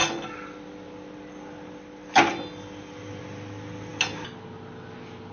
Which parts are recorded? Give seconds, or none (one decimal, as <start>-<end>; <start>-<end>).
0.0-5.3